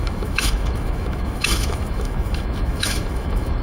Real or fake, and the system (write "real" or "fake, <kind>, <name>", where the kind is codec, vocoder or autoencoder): fake, autoencoder, DAC-VAE